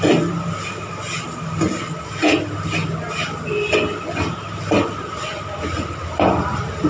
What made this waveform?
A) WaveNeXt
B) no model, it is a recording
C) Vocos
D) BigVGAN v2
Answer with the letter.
B